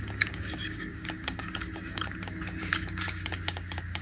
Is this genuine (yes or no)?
no